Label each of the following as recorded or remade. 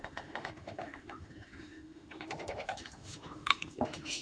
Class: remade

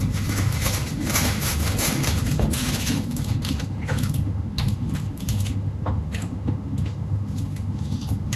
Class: remade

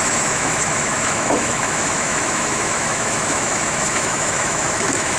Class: remade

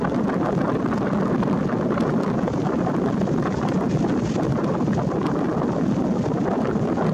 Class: recorded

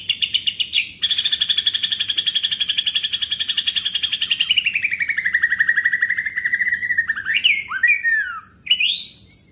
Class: recorded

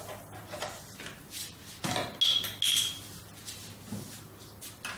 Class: recorded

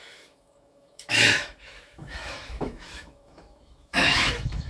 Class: remade